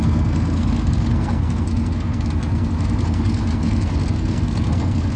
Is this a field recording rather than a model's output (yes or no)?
no